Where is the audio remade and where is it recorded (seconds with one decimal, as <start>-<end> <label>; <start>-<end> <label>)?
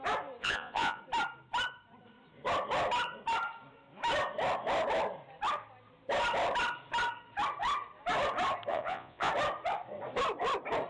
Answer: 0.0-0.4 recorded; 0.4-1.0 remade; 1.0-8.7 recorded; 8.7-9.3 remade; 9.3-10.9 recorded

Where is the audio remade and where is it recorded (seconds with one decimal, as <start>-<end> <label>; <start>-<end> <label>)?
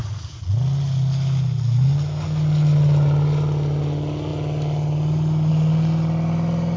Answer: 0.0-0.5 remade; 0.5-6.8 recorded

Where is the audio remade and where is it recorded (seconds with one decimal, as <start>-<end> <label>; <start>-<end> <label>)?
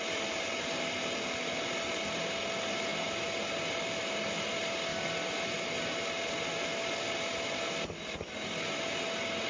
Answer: 0.0-9.5 recorded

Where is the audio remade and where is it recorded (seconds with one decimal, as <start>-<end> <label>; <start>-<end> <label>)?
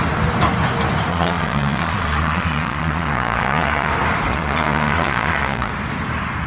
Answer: 0.0-1.1 recorded; 1.1-3.9 remade; 3.9-4.3 recorded; 4.3-5.7 remade; 5.7-6.5 recorded